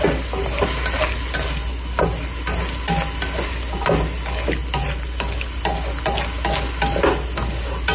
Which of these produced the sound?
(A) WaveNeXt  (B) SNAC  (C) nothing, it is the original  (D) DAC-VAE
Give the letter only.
C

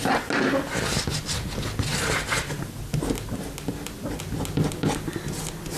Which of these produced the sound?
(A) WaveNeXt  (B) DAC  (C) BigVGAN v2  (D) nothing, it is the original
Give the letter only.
D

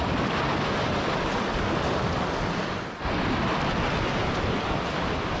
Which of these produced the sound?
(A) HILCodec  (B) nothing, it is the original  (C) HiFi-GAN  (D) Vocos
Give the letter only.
B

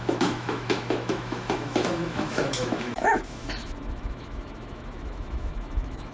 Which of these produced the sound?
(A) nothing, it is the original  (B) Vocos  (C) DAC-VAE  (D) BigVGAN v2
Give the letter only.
C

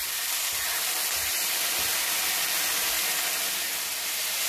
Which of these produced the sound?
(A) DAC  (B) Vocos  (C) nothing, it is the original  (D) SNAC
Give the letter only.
C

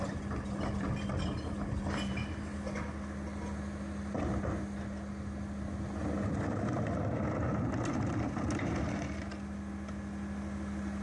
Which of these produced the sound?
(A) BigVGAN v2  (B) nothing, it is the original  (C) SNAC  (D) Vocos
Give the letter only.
B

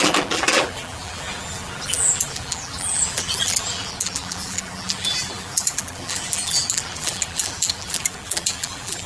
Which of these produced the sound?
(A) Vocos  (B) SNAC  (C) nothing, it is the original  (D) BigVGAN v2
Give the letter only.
D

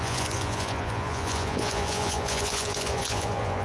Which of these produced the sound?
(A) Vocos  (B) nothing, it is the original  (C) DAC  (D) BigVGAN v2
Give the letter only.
A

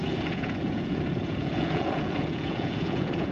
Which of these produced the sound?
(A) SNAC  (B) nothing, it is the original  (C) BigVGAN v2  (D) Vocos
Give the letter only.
D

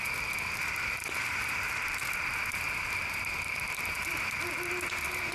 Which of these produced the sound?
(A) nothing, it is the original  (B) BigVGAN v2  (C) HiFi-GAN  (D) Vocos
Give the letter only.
A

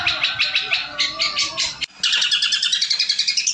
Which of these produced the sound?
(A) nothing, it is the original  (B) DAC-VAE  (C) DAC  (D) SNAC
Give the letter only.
A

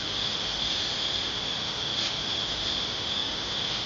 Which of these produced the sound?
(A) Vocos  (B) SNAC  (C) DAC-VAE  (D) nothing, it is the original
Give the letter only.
C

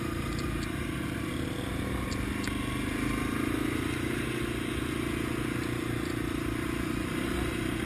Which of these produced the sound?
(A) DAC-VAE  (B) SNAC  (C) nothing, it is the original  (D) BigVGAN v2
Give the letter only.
C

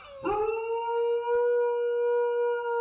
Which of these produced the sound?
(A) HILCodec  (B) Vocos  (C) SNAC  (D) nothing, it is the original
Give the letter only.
D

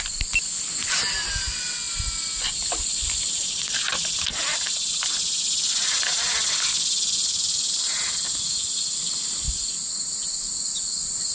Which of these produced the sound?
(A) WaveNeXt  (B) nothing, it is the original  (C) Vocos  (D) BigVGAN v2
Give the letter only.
B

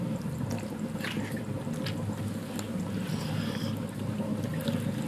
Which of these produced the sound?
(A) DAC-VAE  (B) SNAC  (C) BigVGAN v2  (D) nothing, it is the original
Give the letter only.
D